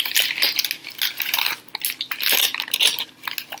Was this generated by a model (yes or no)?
no